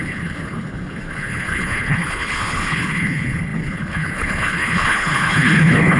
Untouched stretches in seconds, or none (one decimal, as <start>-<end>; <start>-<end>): none